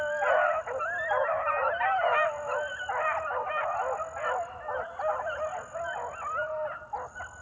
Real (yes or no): yes